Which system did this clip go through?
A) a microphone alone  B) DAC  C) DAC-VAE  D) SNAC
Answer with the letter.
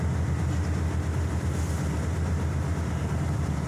A